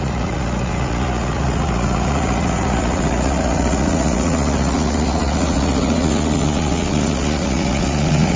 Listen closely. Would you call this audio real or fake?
fake